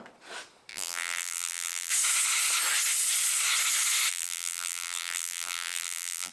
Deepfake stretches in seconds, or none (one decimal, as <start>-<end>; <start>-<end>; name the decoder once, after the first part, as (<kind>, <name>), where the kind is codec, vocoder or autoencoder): 0.7-1.9 (vocoder, BigVGAN v2); 4.1-6.3